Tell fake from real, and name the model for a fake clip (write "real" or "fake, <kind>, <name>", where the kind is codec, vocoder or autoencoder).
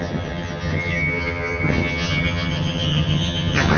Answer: fake, vocoder, HiFi-GAN